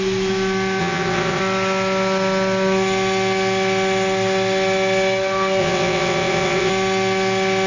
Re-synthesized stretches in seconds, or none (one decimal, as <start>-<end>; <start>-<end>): 0.8-1.4; 5.6-6.7